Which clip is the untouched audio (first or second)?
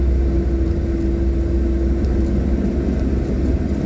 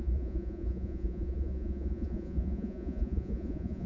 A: first